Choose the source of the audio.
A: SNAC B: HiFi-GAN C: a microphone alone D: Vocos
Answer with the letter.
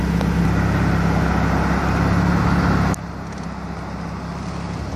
C